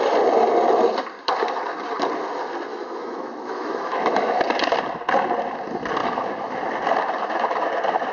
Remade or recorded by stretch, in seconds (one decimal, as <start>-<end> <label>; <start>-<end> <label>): 0.0-2.7 recorded; 2.7-4.4 remade; 4.4-6.0 recorded; 6.0-6.6 remade; 6.6-8.1 recorded